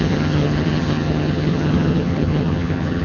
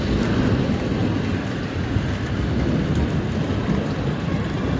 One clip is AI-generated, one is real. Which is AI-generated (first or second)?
first